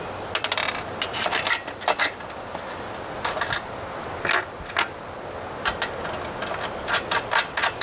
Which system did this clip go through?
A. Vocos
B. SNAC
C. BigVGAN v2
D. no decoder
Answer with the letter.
D